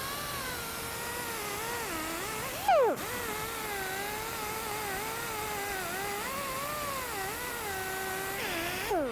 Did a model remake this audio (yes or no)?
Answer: no